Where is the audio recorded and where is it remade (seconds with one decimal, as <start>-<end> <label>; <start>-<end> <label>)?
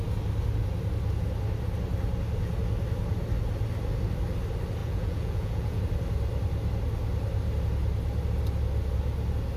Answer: 0.0-4.8 recorded; 4.8-5.8 remade; 5.8-9.6 recorded